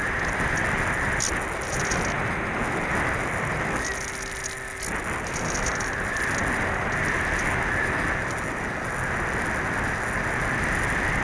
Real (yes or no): yes